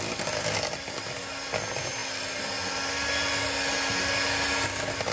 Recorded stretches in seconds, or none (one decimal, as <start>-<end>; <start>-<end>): 0.0-5.1